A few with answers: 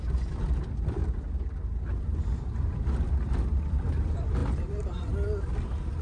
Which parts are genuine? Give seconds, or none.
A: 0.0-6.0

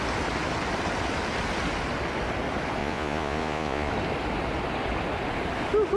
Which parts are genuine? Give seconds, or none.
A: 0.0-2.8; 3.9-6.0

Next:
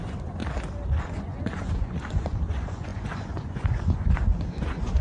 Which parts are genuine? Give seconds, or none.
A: 0.4-1.0

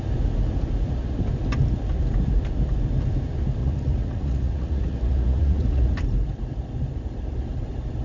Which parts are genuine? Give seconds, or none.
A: 0.0-3.6; 5.9-8.0

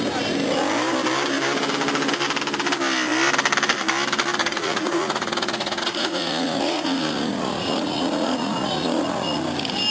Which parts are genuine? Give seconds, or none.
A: 0.0-4.4; 9.4-9.9

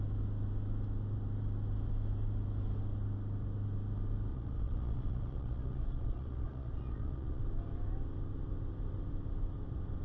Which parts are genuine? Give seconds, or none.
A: 0.0-4.3; 7.4-10.0